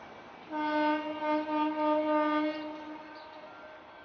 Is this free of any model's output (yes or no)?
yes